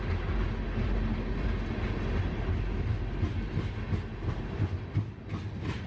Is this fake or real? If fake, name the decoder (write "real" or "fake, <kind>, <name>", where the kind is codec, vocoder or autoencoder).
real